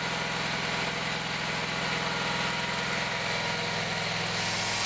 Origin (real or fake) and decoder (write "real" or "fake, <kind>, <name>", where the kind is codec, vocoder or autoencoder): real